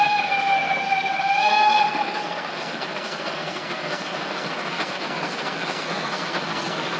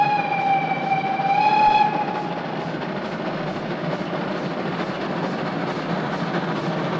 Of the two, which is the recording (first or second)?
second